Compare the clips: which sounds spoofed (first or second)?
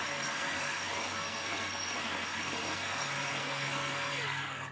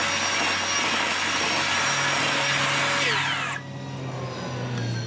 first